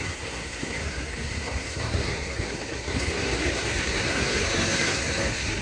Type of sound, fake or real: fake